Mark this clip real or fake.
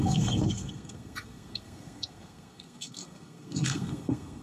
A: fake